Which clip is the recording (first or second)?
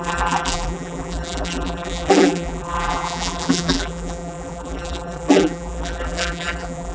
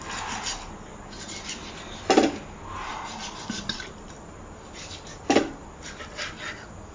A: second